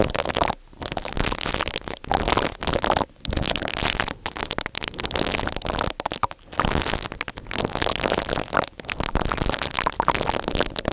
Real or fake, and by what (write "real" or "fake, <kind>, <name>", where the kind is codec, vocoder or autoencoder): real